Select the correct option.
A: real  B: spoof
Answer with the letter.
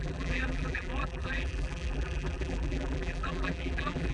B